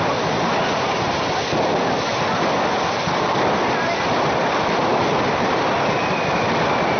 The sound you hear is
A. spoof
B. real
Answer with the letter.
B